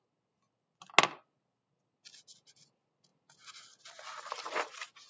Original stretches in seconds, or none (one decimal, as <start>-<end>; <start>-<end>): 0.0-5.1